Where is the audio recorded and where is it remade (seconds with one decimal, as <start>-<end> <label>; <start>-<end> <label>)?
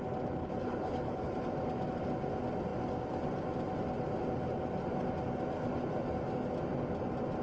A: 0.0-0.4 recorded; 0.4-1.3 remade; 1.3-7.4 recorded